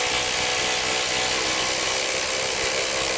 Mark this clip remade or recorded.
recorded